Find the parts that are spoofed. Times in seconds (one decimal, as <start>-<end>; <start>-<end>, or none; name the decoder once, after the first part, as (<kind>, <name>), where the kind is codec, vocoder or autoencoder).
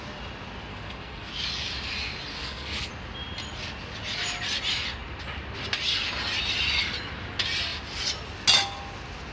0.7-1.3 (codec, SNAC); 2.3-2.9